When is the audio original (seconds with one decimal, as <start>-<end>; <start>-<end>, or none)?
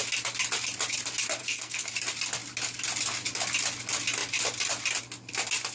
0.0-1.4; 1.9-5.7